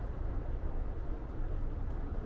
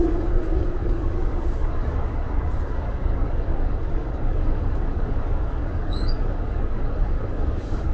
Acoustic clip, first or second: first